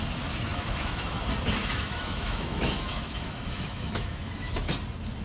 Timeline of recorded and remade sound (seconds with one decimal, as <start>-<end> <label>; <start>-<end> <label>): 0.0-0.5 recorded; 0.5-1.2 remade; 1.2-1.6 recorded; 1.6-4.7 remade; 4.7-5.2 recorded